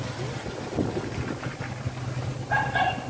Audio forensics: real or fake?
real